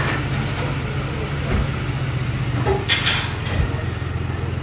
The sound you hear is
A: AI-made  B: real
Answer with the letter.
B